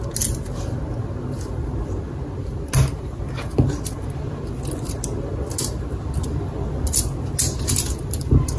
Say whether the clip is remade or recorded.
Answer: recorded